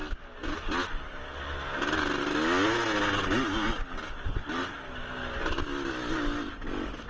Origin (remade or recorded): recorded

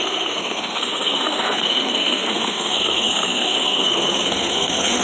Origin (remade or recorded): remade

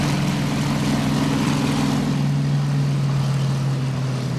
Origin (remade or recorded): recorded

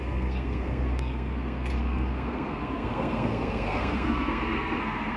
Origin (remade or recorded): remade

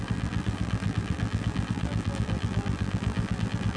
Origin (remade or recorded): remade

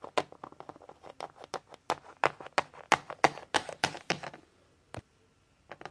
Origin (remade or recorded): recorded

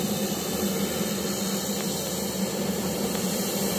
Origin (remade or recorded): recorded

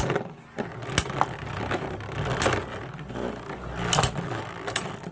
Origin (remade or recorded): recorded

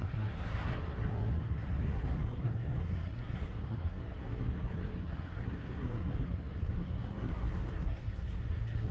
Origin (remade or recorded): remade